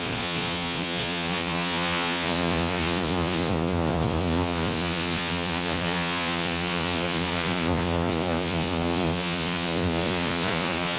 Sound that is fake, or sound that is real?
fake